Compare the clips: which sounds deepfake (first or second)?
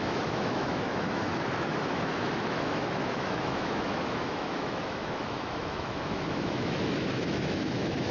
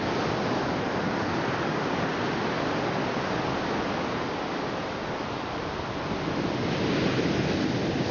first